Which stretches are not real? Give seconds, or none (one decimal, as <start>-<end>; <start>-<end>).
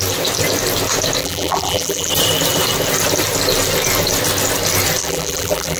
1.2-2.1; 5.0-5.8